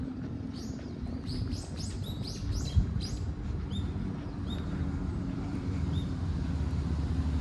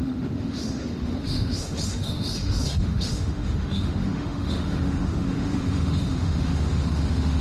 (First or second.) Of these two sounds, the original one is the first